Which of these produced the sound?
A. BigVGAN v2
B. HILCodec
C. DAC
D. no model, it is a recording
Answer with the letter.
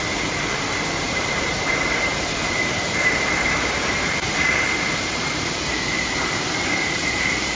A